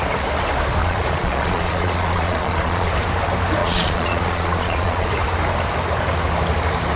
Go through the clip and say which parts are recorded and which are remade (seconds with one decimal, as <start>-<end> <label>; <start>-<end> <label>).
0.0-0.8 recorded; 0.8-2.9 remade; 2.9-3.6 recorded; 3.6-5.1 remade; 5.1-7.0 recorded